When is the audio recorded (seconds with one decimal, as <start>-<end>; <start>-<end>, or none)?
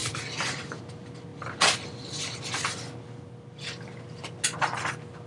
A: 0.8-5.3